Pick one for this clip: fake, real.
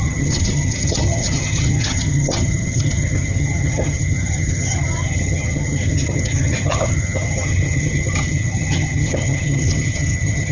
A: fake